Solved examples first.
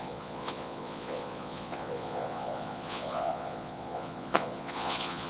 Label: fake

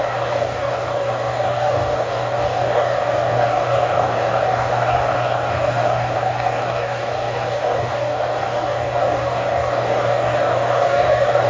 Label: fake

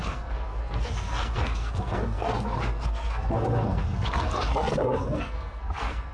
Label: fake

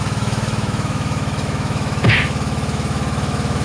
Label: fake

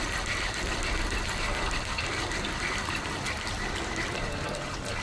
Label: real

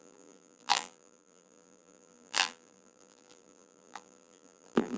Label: fake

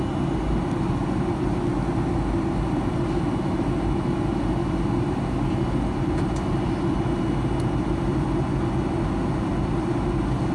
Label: real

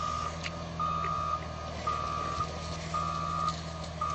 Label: real